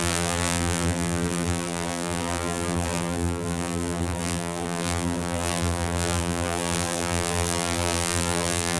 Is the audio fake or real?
fake